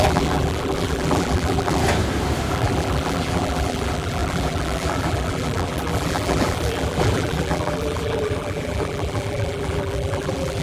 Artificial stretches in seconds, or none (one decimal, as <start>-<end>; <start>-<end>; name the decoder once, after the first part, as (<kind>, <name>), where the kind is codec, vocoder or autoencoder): 0.0-1.8 (vocoder, BigVGAN v2); 2.5-10.6